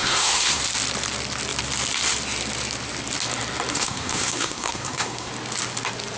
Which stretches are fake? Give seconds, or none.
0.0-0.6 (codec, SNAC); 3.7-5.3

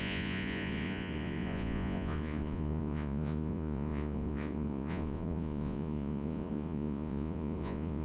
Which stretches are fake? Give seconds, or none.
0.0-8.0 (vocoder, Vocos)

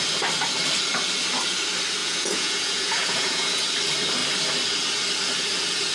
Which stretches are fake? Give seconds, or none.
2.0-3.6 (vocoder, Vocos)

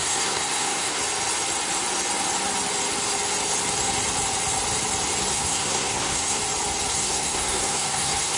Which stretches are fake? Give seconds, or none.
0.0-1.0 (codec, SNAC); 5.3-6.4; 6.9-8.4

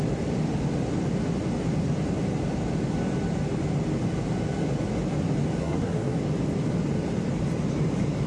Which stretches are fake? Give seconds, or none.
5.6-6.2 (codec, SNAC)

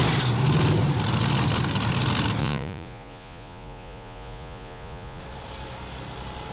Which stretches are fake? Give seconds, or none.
2.4-5.2 (vocoder, Vocos)

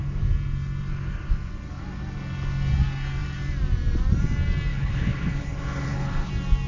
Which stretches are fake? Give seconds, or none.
4.7-6.3 (codec, HILCodec)